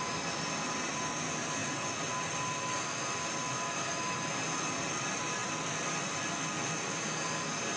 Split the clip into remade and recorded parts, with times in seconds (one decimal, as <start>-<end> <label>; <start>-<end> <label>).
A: 0.0-7.8 recorded